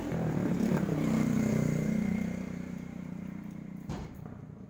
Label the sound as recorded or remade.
remade